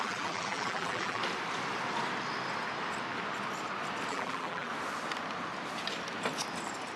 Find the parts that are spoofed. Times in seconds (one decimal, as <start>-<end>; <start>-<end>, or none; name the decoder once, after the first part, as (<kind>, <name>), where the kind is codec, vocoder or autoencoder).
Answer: 0.0-1.2 (vocoder, BigVGAN v2); 4.1-4.7